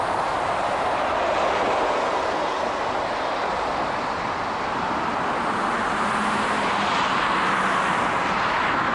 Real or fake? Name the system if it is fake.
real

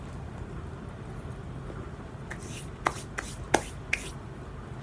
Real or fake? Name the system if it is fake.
real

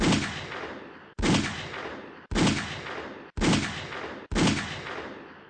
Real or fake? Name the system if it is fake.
real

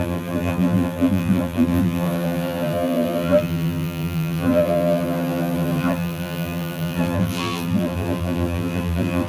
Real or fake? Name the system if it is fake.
fake, vocoder, BigVGAN v2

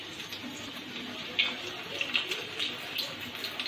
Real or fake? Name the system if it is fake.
real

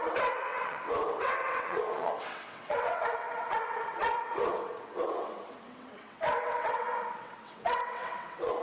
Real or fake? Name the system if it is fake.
fake, vocoder, WaveNeXt